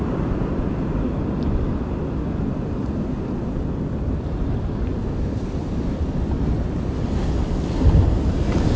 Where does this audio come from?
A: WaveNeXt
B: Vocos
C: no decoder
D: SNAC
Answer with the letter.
C